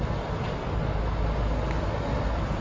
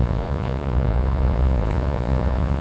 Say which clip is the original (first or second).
first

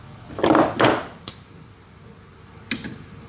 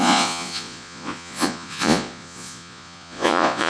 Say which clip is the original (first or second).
first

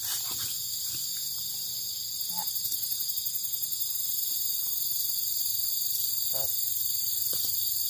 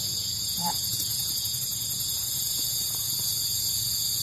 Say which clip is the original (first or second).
first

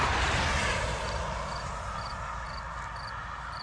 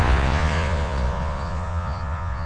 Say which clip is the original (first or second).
first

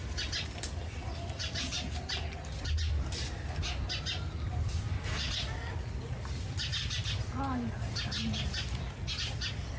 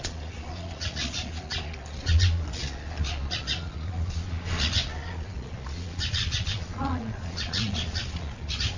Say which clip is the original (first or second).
first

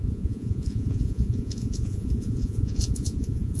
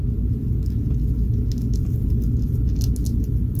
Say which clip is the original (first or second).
second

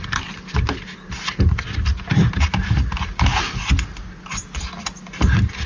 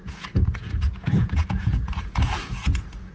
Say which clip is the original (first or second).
first